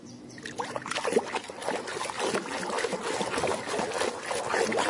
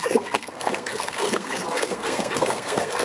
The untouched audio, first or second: first